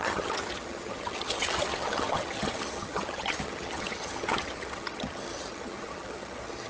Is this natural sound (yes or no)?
no